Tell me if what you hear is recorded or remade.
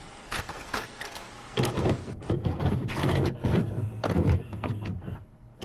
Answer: remade